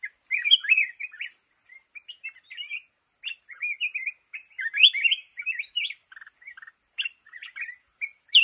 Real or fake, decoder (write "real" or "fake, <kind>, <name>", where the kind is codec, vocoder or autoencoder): real